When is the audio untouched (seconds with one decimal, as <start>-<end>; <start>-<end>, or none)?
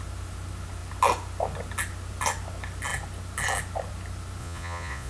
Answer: 0.0-4.4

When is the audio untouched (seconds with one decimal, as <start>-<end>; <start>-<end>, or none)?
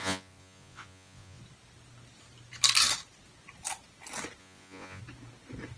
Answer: 1.4-4.4; 5.0-5.8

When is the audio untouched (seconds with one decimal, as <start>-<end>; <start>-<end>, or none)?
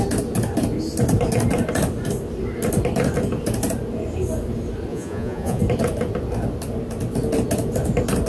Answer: 0.0-4.9; 5.6-8.3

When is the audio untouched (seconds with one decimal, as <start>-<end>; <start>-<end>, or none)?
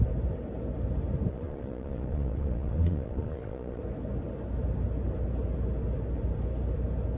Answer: 0.0-1.3; 3.8-7.2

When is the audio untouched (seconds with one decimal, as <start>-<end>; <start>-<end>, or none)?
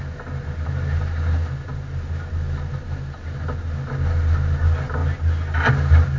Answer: 0.0-6.2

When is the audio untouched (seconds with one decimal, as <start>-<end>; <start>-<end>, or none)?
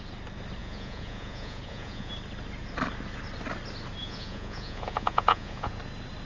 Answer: 0.0-0.6; 2.1-4.0; 5.8-6.3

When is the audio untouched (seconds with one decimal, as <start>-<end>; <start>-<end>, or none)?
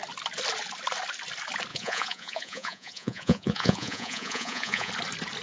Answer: 0.0-1.7; 4.9-5.4